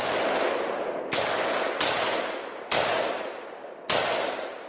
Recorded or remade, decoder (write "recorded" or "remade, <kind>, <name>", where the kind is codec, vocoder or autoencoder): recorded